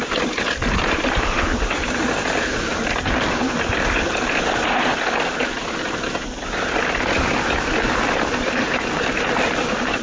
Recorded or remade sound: recorded